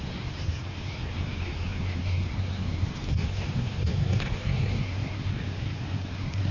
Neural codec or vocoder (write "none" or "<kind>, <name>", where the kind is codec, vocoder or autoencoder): codec, SNAC